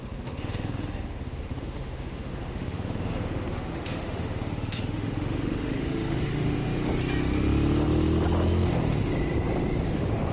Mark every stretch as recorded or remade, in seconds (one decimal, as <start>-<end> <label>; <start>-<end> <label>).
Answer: 0.0-6.8 remade; 6.8-9.8 recorded; 9.8-10.3 remade

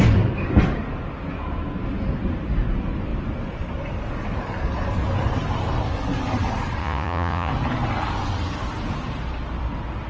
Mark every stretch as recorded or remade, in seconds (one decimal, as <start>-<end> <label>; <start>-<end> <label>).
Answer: 0.0-6.8 recorded; 6.8-7.5 remade; 7.5-10.1 recorded